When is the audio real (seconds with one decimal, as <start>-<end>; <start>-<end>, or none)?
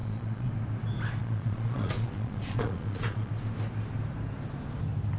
0.5-1.2; 3.3-5.2